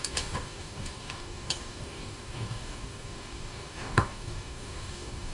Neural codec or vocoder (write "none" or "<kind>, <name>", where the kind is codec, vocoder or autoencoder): codec, DAC